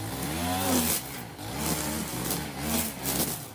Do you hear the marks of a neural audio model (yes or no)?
no